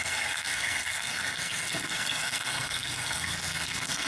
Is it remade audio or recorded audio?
remade